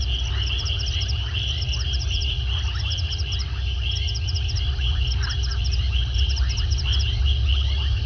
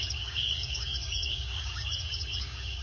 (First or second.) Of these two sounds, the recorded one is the first